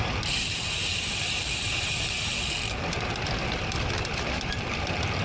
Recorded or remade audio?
remade